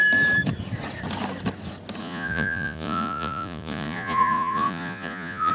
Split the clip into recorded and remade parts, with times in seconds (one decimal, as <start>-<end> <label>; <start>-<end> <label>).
0.0-2.0 recorded; 2.0-5.5 remade